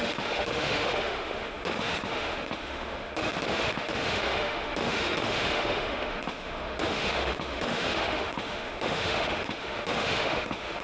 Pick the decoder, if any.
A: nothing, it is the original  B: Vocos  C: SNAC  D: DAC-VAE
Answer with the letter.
D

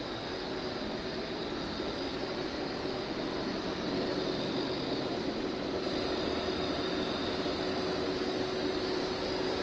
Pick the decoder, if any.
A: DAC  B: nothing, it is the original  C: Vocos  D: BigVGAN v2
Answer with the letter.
B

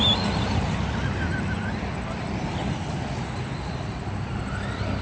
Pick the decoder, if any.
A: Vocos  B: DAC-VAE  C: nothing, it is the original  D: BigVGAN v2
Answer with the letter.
C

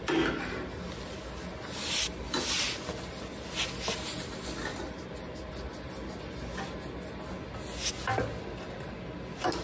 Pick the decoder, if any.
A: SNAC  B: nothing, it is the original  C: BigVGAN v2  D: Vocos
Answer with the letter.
B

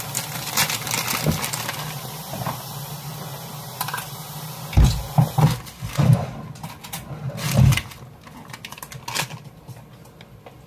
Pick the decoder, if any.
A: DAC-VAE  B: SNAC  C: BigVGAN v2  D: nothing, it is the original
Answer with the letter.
D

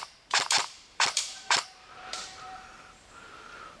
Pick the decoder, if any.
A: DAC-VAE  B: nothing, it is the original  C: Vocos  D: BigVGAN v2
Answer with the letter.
D